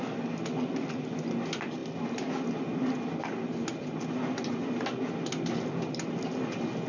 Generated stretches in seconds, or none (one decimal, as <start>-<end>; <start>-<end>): none